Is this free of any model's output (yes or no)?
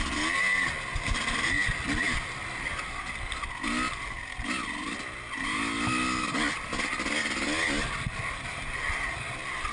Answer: yes